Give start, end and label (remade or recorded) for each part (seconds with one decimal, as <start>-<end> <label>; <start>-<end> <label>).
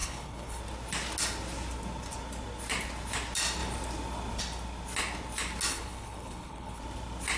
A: 0.0-0.6 remade; 0.6-5.7 recorded; 5.7-6.8 remade; 6.8-7.4 recorded